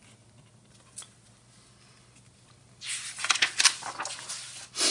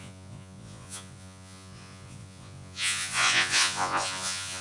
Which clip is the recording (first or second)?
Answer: first